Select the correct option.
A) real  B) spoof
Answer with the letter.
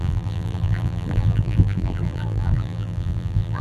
B